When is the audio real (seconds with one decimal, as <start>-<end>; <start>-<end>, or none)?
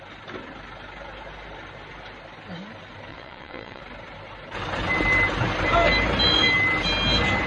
0.0-3.1; 3.8-7.5